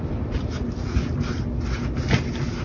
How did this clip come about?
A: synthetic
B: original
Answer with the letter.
B